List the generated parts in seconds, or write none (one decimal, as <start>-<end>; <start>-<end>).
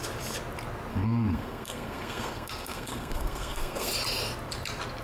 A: 0.9-3.9